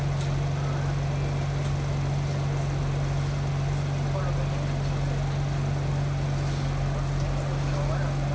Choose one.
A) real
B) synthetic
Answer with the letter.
A